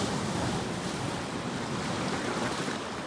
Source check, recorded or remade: recorded